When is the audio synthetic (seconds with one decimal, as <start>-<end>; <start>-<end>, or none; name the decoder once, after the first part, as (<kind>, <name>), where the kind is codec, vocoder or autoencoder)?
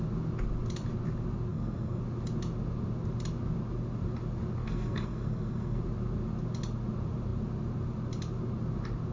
1.5-2.0 (codec, SNAC); 4.6-5.8